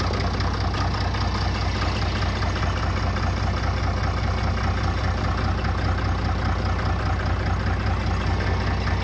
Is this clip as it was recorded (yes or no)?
yes